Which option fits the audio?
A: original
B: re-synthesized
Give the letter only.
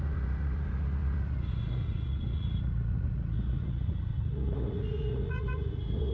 B